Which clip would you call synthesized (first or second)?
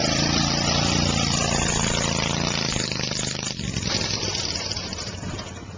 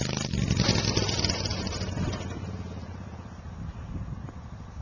first